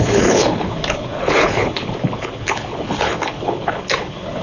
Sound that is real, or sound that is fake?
fake